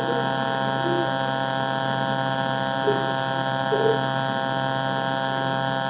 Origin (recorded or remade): recorded